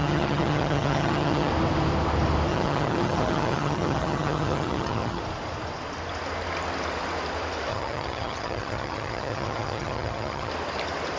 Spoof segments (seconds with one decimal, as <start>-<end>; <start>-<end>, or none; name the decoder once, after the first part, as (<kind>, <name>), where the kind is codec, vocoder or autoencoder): 0.0-1.5 (vocoder, HiFi-GAN); 2.5-5.2; 7.7-10.5